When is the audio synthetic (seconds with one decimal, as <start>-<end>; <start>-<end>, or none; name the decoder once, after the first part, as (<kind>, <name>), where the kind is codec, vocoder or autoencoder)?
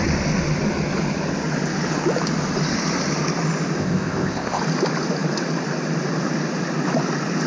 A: 3.8-4.6 (codec, ZipCodec)